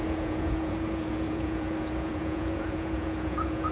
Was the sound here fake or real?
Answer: fake